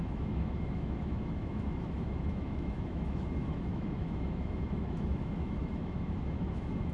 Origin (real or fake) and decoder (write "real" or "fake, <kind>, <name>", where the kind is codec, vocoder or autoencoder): fake, autoencoder, DAC-VAE